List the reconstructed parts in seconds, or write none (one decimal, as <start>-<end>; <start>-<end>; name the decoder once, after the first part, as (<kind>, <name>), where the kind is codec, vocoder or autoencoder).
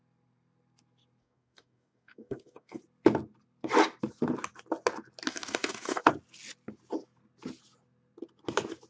1.2-2.8 (codec, DAC); 5.3-6.1